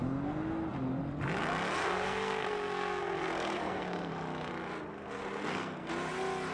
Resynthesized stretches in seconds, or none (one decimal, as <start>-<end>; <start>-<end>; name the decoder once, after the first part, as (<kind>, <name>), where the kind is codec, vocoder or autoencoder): 1.8-4.1 (codec, SNAC); 4.9-5.9

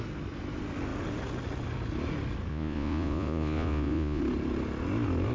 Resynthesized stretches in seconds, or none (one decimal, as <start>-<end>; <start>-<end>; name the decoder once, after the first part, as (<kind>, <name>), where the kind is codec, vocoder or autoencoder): 2.5-4.2 (vocoder, Vocos)

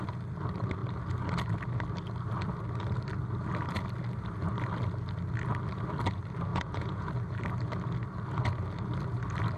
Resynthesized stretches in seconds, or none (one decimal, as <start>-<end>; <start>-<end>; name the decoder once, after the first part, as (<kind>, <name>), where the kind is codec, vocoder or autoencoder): 6.5-7.1 (vocoder, Vocos)

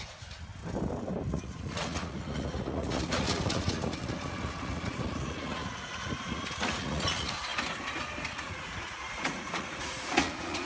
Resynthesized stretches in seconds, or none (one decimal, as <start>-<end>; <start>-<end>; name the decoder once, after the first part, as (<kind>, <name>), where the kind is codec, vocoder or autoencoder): 0.0-0.5 (vocoder, Vocos); 1.3-7.5; 8.3-10.7